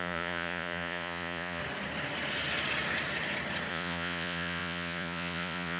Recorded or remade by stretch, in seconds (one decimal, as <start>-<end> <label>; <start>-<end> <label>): 0.0-1.6 remade; 1.6-3.7 recorded; 3.7-5.8 remade